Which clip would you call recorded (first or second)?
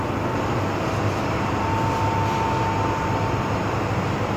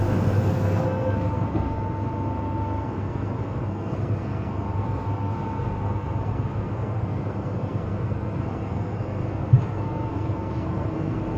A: first